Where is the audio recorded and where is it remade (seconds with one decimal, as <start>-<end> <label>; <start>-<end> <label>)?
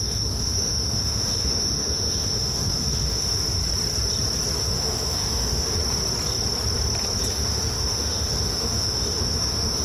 0.0-3.6 remade; 3.6-4.6 recorded; 4.6-5.8 remade; 5.8-7.3 recorded; 7.3-9.8 remade